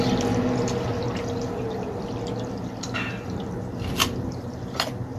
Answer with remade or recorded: recorded